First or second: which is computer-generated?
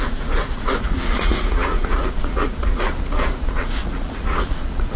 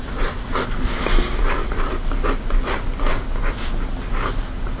first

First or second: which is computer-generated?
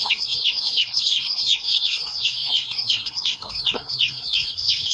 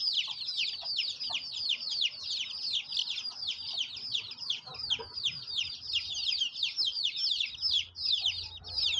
first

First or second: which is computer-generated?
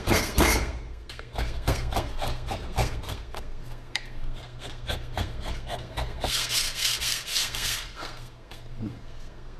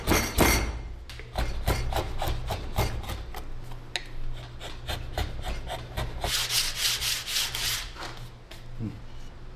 first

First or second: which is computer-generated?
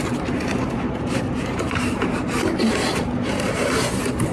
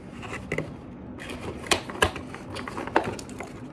first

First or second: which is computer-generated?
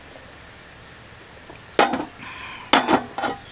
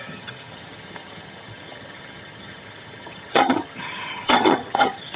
second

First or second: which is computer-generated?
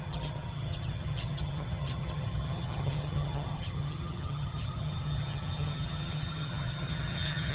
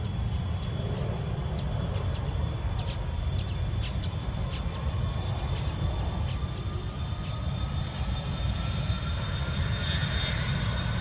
first